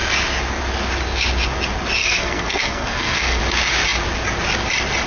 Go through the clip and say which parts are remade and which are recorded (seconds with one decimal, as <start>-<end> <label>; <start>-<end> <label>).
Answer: 0.0-2.0 recorded; 2.0-3.4 remade; 3.4-5.1 recorded